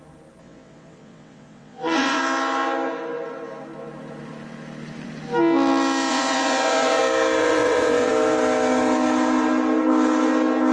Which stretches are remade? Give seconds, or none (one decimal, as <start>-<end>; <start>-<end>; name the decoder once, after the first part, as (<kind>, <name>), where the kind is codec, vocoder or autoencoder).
0.4-2.2 (vocoder, WaveNeXt); 6.1-7.0; 7.4-8.1